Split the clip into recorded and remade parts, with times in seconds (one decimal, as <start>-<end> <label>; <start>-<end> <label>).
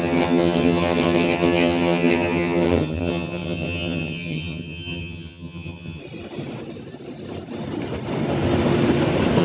0.0-6.0 remade; 6.0-9.4 recorded